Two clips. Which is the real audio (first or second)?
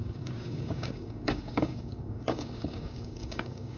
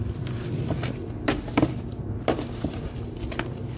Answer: second